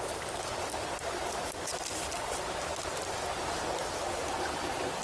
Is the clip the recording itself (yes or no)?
yes